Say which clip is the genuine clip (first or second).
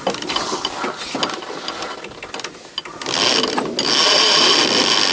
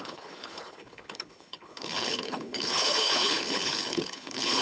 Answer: first